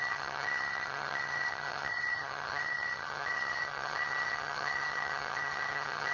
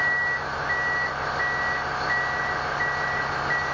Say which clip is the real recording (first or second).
second